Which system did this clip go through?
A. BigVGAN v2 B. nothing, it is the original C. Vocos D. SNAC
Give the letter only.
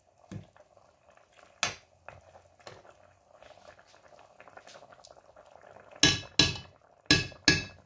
B